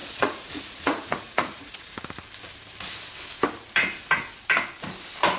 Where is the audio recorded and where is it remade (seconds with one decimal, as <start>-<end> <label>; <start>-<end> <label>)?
0.0-2.0 remade; 2.0-5.4 recorded